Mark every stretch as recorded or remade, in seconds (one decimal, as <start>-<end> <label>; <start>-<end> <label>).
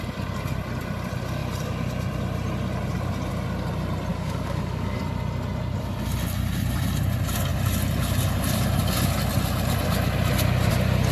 0.0-4.1 recorded; 4.1-5.0 remade; 5.0-11.1 recorded